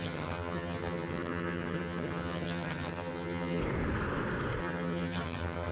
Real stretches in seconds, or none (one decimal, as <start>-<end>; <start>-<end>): 3.6-4.6

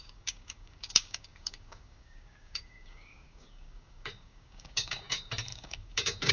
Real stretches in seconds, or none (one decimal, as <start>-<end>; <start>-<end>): none

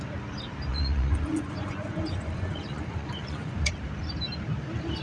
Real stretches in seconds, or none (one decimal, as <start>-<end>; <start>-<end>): 0.0-0.7; 3.7-5.0